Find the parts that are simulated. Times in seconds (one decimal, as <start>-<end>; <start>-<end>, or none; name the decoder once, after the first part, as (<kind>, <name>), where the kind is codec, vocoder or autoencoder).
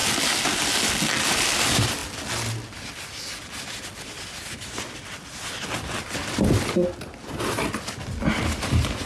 none